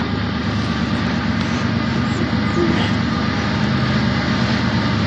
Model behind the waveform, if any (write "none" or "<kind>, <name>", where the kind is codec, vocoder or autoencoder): none